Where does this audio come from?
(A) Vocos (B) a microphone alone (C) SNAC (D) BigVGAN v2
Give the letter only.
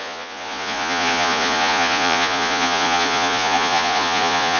A